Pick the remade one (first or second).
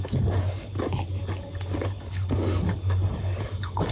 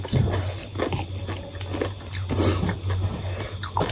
first